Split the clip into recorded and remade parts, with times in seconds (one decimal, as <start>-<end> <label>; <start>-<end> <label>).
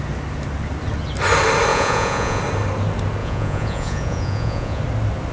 0.0-1.7 recorded; 1.7-2.4 remade; 2.4-3.2 recorded; 3.2-4.8 remade; 4.8-5.3 recorded